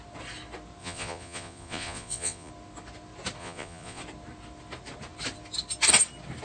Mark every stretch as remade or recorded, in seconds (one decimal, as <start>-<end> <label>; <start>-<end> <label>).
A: 0.0-0.8 recorded; 0.8-2.5 remade; 2.5-3.4 recorded; 3.4-4.0 remade; 4.0-6.4 recorded